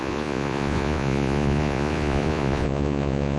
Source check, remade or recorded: remade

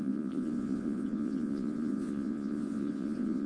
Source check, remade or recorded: remade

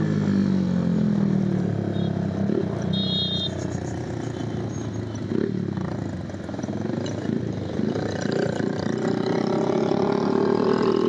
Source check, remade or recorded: recorded